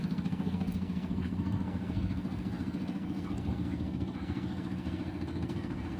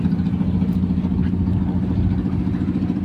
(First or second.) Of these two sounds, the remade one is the first